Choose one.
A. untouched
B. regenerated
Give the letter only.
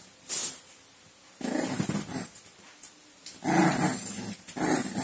A